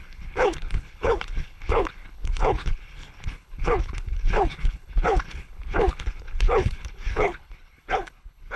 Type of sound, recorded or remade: remade